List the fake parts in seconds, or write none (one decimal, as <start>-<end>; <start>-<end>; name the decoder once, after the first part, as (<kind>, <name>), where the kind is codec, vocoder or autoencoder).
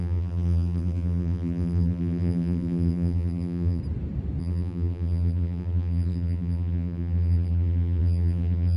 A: 0.0-3.8 (vocoder, BigVGAN v2); 4.4-8.8